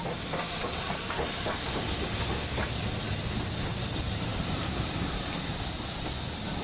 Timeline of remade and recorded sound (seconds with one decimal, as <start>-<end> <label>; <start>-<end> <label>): 0.0-4.3 recorded; 4.3-6.1 remade; 6.1-6.6 recorded